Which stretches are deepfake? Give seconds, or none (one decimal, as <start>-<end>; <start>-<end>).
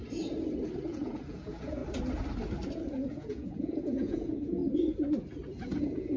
0.9-1.8; 2.9-4.6; 5.8-6.2